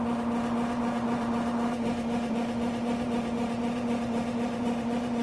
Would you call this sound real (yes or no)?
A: no